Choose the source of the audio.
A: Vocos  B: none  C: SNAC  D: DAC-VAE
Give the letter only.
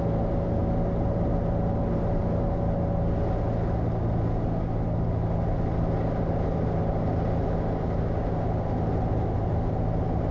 B